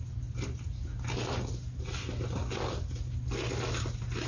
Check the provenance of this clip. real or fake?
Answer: real